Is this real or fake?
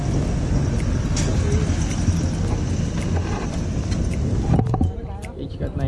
real